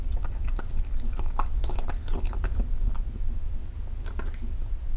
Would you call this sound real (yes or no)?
yes